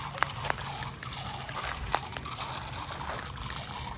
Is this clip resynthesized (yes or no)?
no